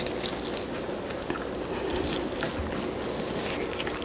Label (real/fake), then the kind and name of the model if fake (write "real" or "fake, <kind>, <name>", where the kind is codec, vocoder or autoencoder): real